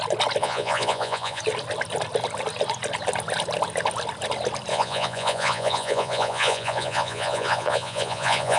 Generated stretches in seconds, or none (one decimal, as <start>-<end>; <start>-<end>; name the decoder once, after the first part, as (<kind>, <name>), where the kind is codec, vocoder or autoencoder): 0.4-1.4 (vocoder, Vocos); 4.7-8.6